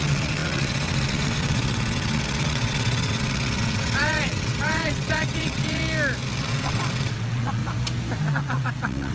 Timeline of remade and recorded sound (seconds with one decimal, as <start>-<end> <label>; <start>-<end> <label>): 0.0-5.8 remade; 5.8-6.4 recorded; 6.4-7.6 remade; 7.6-8.3 recorded; 8.3-9.1 remade